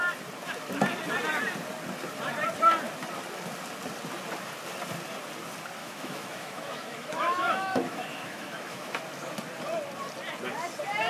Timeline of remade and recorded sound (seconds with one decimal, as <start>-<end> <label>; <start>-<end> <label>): 0.0-5.8 recorded; 5.8-9.0 remade; 9.0-11.1 recorded